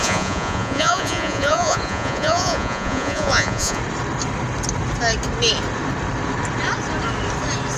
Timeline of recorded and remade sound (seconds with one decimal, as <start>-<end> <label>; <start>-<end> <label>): 0.0-3.8 remade; 3.8-7.8 recorded